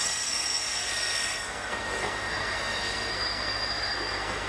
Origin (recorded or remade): remade